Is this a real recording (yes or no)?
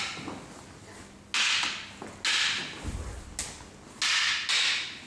yes